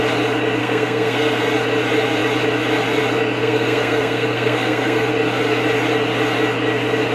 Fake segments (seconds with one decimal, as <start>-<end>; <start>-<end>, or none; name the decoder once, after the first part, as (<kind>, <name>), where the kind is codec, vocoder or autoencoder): 0.6-1.4 (codec, SNAC); 3.4-5.1